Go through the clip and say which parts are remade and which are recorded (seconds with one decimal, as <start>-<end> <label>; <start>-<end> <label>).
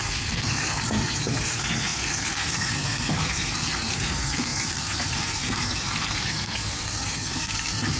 0.0-8.0 remade